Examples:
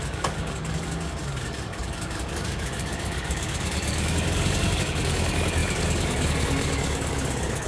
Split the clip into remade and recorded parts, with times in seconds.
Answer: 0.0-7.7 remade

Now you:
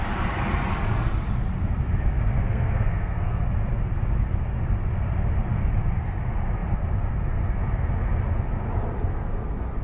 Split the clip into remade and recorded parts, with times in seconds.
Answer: 0.0-2.3 recorded; 2.3-3.4 remade; 3.4-9.8 recorded

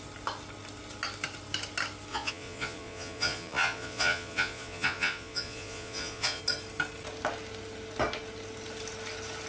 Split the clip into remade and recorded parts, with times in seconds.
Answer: 0.0-2.1 recorded; 2.1-6.4 remade; 6.4-9.5 recorded

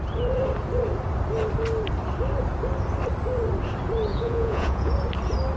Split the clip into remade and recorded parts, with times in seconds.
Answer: 0.0-4.1 recorded; 4.1-4.9 remade; 4.9-5.6 recorded